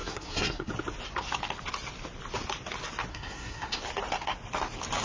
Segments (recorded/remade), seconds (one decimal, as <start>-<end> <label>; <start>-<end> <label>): 0.0-0.7 remade; 0.7-3.1 recorded; 3.1-3.8 remade; 3.8-5.0 recorded

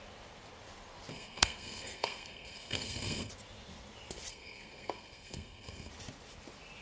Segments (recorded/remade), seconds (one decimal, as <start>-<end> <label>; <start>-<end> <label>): 0.0-1.1 recorded; 1.1-3.3 remade; 3.3-4.3 recorded; 4.3-5.9 remade; 5.9-6.8 recorded

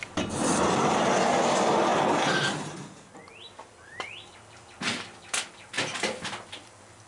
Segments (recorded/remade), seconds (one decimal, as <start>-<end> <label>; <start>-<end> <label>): 0.0-7.1 recorded

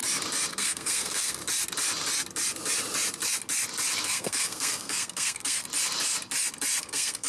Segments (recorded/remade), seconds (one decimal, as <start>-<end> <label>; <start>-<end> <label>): 0.0-0.5 recorded; 0.5-1.4 remade; 1.4-4.0 recorded; 4.0-5.6 remade; 5.6-6.8 recorded; 6.8-7.3 remade

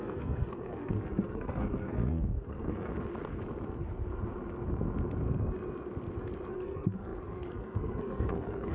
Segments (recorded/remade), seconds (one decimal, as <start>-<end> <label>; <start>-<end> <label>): 0.0-2.9 remade; 2.9-6.5 recorded; 6.5-8.7 remade

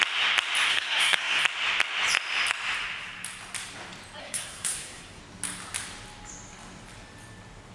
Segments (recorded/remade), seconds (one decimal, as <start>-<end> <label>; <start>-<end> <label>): 0.0-0.7 recorded; 0.7-1.4 remade; 1.4-4.2 recorded; 4.2-5.2 remade; 5.2-7.7 recorded

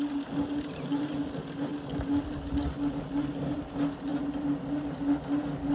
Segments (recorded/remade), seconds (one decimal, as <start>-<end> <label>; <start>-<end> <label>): 0.0-5.7 recorded